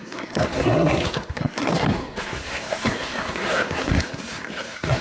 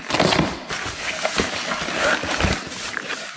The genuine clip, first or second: second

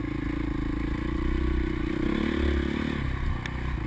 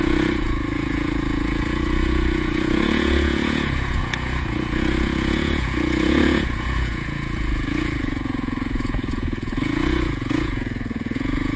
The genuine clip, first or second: first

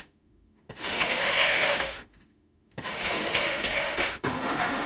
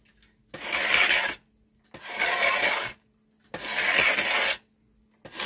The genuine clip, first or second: second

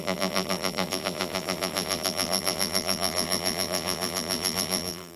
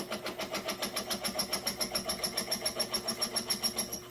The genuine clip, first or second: second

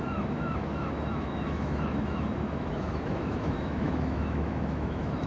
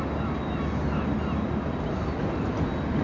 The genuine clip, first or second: second